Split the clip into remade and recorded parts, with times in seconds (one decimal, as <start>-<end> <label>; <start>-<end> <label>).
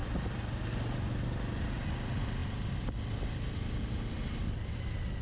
0.0-5.2 recorded